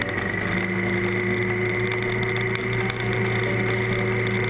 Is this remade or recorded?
recorded